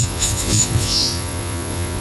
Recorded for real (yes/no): no